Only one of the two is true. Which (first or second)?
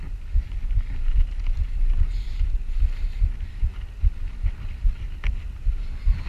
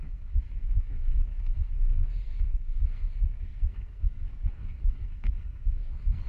first